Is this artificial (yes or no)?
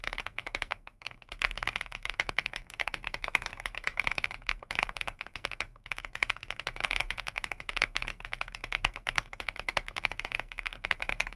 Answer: yes